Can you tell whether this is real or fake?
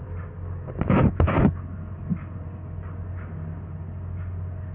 real